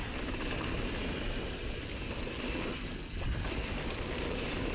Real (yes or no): yes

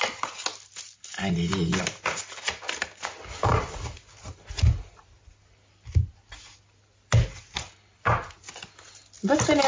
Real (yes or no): yes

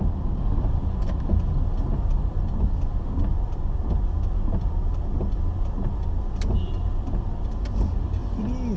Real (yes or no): yes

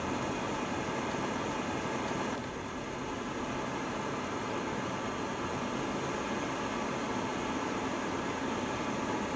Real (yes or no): yes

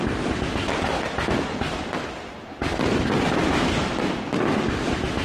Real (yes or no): yes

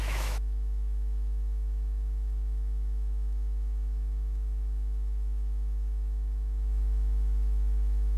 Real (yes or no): no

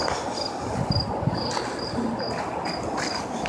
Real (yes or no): yes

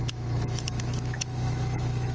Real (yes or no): no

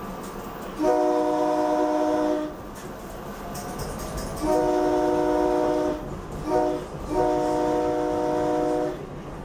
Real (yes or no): yes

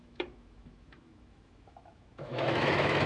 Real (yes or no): no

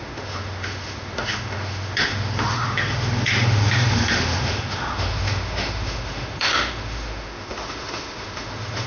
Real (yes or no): no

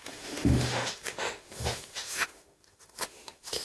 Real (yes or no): no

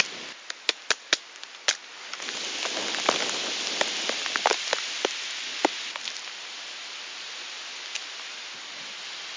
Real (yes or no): yes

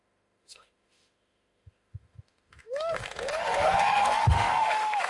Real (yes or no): no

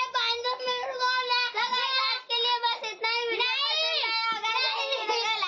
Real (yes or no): yes